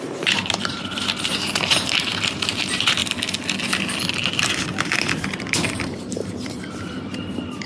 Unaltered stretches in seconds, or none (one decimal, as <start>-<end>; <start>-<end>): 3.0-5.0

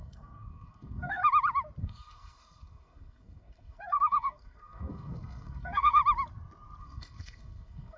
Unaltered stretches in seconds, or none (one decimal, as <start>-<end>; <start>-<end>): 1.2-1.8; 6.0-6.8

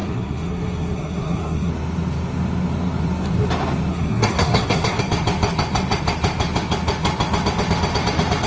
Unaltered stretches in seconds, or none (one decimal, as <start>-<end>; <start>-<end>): 1.7-3.9; 5.0-8.5